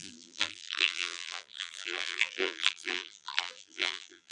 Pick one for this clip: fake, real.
fake